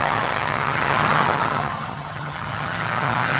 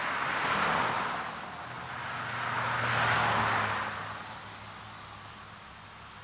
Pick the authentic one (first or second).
second